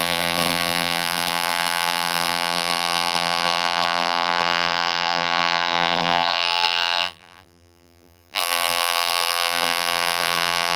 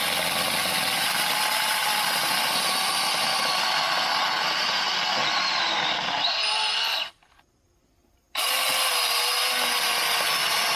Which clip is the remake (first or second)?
first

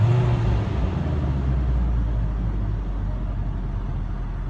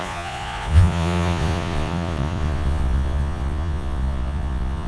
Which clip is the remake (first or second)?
second